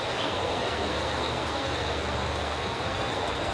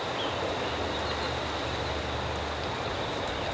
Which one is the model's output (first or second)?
first